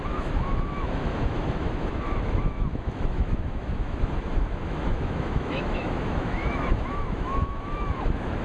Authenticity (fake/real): fake